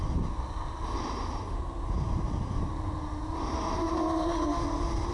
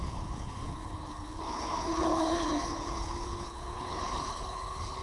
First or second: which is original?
first